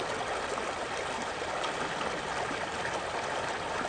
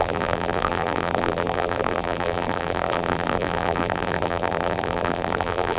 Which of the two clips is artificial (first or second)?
second